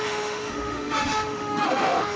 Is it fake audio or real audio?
fake